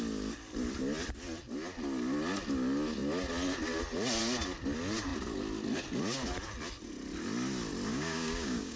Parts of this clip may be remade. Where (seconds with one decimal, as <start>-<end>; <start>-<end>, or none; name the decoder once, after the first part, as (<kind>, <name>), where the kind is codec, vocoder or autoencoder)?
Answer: 7.9-8.8 (codec, DAC)